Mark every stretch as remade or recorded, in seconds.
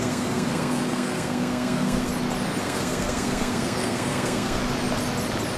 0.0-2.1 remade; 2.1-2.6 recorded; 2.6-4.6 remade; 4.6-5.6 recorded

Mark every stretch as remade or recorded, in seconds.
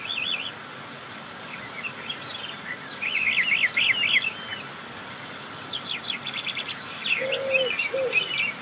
0.0-8.6 recorded